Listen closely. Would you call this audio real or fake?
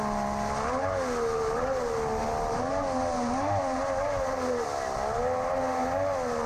real